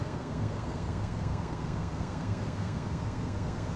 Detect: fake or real fake